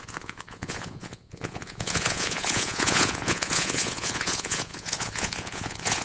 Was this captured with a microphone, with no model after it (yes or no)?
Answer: no